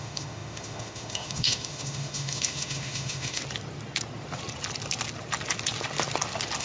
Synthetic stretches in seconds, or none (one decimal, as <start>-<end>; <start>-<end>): 0.0-3.4